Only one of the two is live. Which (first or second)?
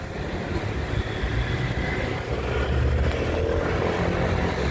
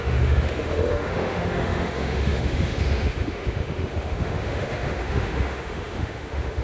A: first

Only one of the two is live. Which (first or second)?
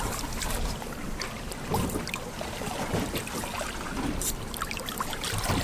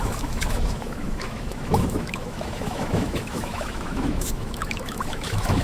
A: first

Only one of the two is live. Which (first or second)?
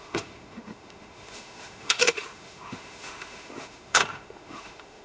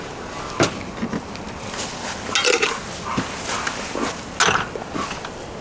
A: second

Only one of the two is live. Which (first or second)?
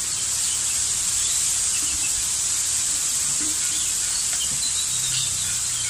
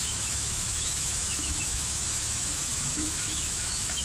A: first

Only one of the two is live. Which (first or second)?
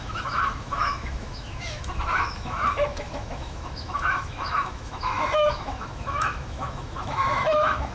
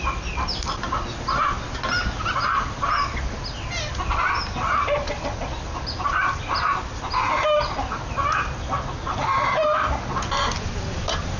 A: second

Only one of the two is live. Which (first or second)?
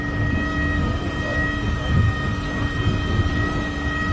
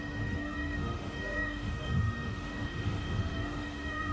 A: first